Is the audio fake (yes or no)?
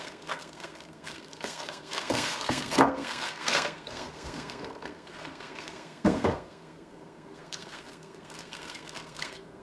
yes